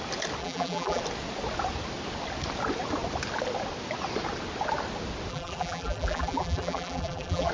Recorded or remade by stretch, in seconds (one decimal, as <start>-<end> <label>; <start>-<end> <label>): 0.0-0.4 recorded; 0.4-1.0 remade; 1.0-5.3 recorded; 5.3-7.5 remade